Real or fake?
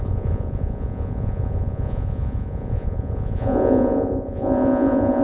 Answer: fake